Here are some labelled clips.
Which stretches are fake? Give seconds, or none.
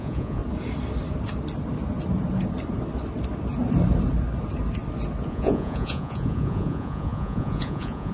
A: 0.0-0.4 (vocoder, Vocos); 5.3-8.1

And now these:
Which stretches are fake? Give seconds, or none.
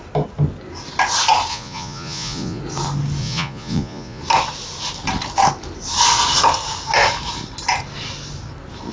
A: 1.5-2.6 (vocoder, Vocos); 3.2-4.2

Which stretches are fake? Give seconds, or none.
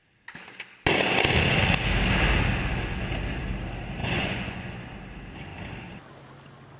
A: 4.0-4.9 (vocoder, Vocos)